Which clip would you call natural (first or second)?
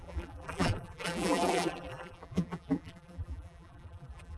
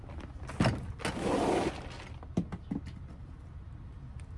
second